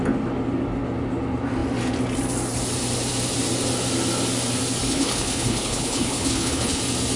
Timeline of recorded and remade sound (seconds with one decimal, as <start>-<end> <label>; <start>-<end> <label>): 0.0-4.9 recorded; 4.9-6.8 remade; 6.8-7.2 recorded